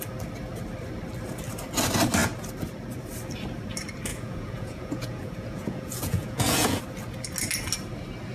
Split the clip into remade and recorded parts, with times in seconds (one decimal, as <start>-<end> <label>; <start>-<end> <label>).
0.0-4.1 recorded; 4.1-6.8 remade; 6.8-8.3 recorded